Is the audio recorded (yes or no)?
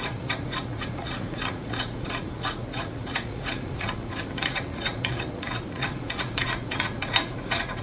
no